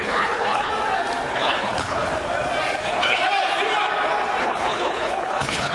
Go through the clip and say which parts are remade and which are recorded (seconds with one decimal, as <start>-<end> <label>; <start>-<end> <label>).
0.0-0.7 remade; 0.7-1.3 recorded; 1.3-2.1 remade; 2.1-2.8 recorded; 2.8-3.2 remade; 3.2-4.4 recorded; 4.4-5.7 remade